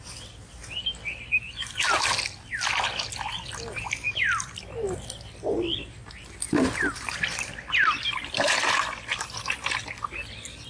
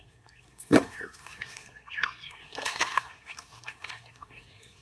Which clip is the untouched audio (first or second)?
first